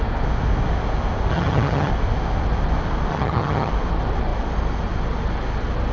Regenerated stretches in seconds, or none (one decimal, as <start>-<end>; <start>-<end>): 1.3-1.9; 3.1-3.7